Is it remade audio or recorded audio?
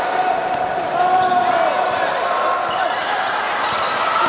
recorded